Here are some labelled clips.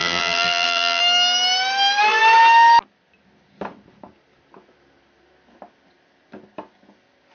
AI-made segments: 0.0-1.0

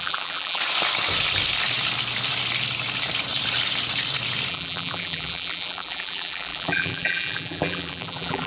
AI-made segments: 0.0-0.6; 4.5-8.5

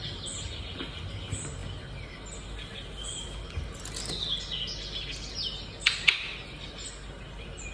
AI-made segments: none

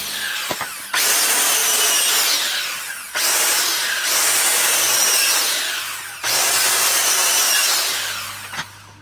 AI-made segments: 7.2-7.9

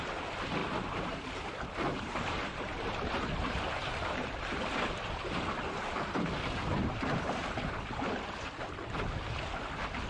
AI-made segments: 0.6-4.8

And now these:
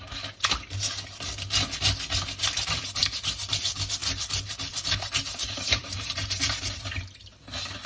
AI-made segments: 5.4-6.4

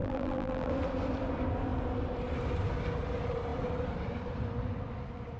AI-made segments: 0.0-0.7